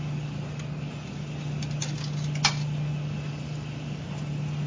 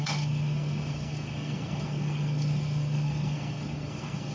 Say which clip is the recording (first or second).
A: first